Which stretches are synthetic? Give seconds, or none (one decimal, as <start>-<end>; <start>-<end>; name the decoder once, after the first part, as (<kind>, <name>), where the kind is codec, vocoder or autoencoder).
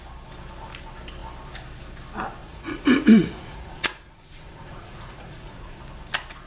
2.4-5.8 (vocoder, Vocos)